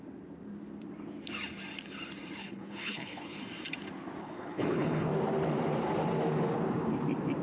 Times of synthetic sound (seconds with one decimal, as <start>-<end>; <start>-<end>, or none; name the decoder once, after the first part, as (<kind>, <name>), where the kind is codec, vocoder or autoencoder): 2.4-3.4 (codec, HILCodec); 4.2-5.1